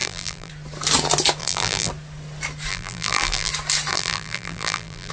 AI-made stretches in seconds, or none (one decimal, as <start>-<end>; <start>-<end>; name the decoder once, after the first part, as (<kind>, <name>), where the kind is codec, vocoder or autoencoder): 0.0-0.5 (vocoder, BigVGAN v2); 1.4-1.9; 2.7-3.5; 3.9-5.1